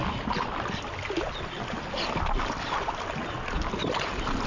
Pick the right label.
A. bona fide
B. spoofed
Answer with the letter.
A